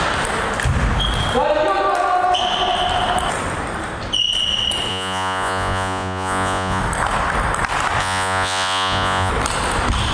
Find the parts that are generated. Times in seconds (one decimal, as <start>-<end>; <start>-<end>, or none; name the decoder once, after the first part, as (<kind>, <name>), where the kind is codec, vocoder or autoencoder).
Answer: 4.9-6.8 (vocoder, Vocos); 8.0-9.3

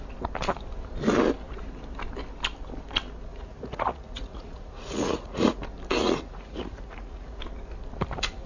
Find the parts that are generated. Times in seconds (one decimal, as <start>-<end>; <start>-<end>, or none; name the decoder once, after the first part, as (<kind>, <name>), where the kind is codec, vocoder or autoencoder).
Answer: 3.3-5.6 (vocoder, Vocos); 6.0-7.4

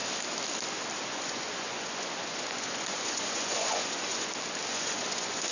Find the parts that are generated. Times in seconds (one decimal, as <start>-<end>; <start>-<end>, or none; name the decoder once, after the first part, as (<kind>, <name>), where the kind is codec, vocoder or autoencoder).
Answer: 1.0-4.3 (vocoder, Vocos); 4.7-5.5

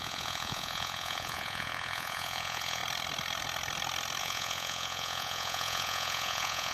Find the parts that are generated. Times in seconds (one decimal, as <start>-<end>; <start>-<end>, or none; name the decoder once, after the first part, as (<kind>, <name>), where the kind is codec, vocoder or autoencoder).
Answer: 0.0-2.8 (vocoder, Vocos); 4.2-6.7

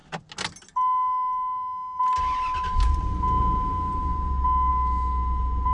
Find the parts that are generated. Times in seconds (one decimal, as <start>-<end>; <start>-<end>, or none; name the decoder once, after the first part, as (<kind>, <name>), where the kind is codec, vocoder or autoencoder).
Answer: none

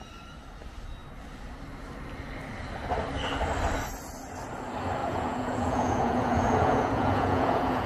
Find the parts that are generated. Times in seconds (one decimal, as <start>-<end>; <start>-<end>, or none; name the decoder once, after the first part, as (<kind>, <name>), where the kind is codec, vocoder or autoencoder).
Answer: 5.0-7.9 (vocoder, Vocos)

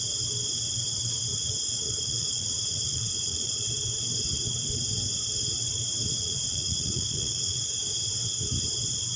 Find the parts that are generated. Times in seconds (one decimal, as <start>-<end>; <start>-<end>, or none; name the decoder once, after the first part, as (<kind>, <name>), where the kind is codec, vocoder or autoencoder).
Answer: 1.3-3.7 (vocoder, Vocos); 6.2-7.6